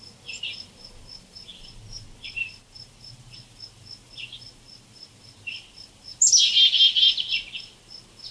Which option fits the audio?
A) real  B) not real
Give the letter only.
A